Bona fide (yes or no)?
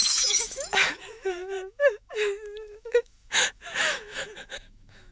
no